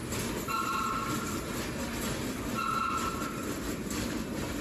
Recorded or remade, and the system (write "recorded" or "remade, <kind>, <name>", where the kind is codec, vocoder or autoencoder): recorded